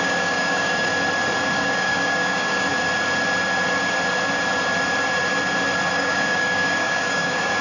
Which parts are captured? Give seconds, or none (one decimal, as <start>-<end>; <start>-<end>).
0.9-1.6; 2.7-5.9